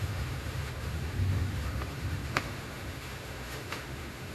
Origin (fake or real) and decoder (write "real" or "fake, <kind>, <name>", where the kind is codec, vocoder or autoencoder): fake, autoencoder, DAC-VAE